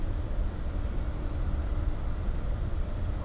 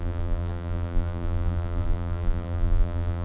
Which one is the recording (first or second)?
first